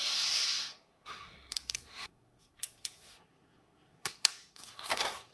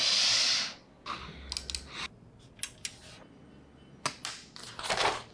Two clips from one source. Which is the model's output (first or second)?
first